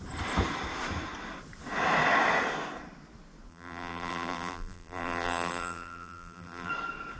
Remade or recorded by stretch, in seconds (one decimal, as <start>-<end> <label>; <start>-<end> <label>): 0.0-3.5 recorded; 3.5-6.7 remade; 6.7-7.2 recorded